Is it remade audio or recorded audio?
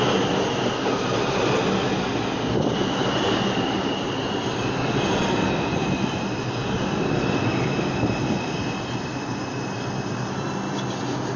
recorded